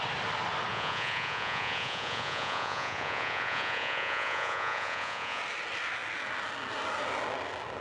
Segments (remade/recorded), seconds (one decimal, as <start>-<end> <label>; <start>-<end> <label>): 0.0-0.7 recorded; 0.7-5.4 remade; 5.4-7.8 recorded